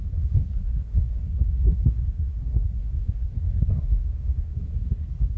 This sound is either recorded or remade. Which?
remade